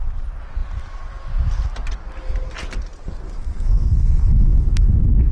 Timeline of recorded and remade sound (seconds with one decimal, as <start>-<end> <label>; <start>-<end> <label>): 0.0-3.2 recorded; 3.2-5.3 remade

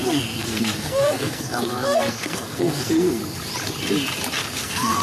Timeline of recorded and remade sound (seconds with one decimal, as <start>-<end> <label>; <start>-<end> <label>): 0.0-3.2 remade; 3.2-4.6 recorded; 4.6-5.0 remade

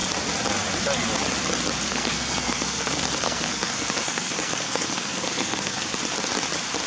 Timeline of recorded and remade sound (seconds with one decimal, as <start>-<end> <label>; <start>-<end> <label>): 0.0-1.9 recorded; 1.9-6.0 remade; 6.0-6.9 recorded

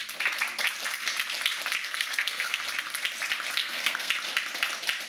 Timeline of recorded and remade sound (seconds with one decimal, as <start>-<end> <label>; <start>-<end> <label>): 0.0-1.8 recorded; 1.8-2.6 remade; 2.6-3.6 recorded; 3.6-4.1 remade; 4.1-5.1 recorded

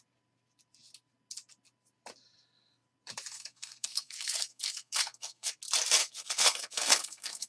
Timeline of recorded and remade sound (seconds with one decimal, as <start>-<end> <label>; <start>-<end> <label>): 0.0-3.3 recorded; 3.3-5.5 remade; 5.5-6.0 recorded; 6.0-7.5 remade

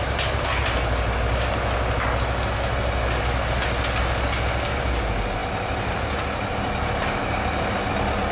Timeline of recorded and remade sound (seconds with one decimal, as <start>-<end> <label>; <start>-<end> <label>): 0.0-8.3 recorded

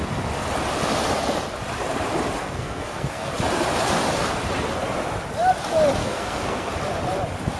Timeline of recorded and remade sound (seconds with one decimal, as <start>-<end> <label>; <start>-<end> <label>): 0.0-2.4 recorded; 2.4-3.3 remade; 3.3-6.0 recorded; 6.0-6.7 remade; 6.7-7.6 recorded

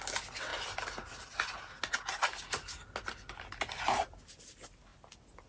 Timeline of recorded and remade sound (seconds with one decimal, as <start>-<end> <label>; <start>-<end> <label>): 0.0-5.5 recorded